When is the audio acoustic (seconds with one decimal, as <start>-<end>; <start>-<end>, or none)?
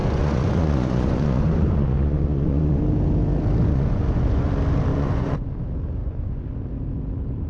2.8-3.7; 4.5-4.9; 5.5-6.0; 6.5-7.5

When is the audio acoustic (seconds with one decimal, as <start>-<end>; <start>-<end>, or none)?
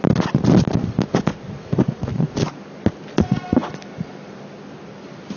0.0-1.7; 2.6-5.4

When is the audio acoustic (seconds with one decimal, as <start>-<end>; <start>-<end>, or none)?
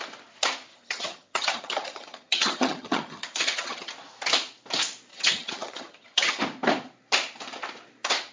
0.0-0.7; 3.9-5.1; 6.4-8.3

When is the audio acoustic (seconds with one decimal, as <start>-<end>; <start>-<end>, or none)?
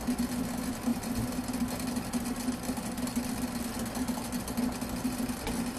0.0-5.8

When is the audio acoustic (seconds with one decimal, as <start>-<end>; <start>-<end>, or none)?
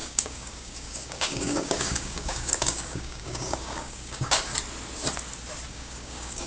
4.5-5.7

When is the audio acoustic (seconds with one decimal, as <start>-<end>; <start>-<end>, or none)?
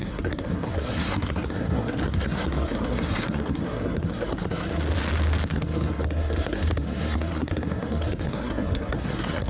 4.8-5.5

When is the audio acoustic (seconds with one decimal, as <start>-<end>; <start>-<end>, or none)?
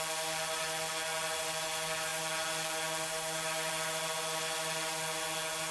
0.0-5.7